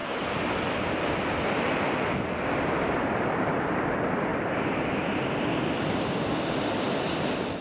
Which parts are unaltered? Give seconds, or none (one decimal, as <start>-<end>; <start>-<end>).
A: 0.0-3.0; 4.3-6.5